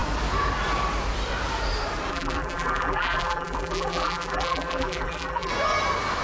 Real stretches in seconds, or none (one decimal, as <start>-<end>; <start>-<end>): 0.0-2.1; 5.5-6.2